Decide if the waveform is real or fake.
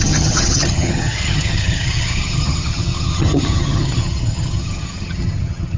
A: fake